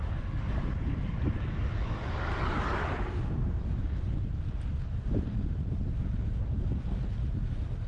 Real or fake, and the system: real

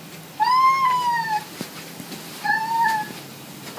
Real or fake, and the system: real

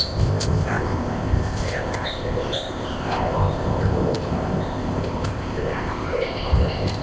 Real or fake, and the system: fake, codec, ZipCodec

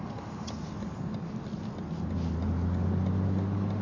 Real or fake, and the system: real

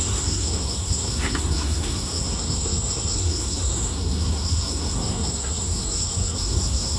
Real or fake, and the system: fake, codec, SNAC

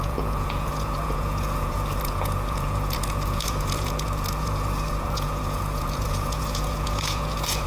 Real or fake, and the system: fake, vocoder, Vocos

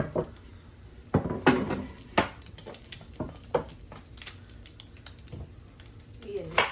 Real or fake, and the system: real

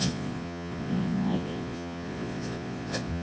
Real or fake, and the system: fake, vocoder, Vocos